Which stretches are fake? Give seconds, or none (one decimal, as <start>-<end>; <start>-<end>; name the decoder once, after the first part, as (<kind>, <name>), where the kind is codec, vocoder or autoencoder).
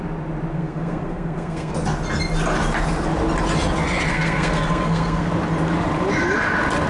0.5-1.7 (codec, SNAC); 4.1-5.3